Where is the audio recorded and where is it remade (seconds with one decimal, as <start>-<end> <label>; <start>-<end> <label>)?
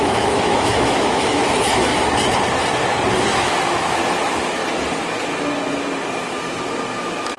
0.0-1.9 remade; 1.9-3.2 recorded; 3.2-4.6 remade; 4.6-7.0 recorded; 7.0-7.4 remade